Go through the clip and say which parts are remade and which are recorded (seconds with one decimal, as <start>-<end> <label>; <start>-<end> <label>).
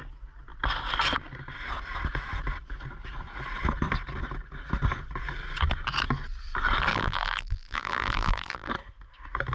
0.0-6.9 recorded; 6.9-8.7 remade; 8.7-9.5 recorded